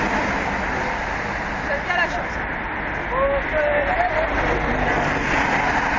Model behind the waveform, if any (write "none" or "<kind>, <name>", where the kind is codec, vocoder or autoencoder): none